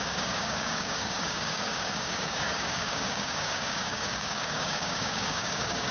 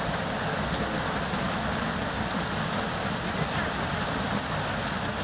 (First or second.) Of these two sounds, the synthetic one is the first